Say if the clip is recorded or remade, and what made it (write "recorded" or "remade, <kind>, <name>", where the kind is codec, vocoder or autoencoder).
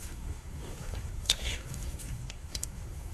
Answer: remade, codec, SNAC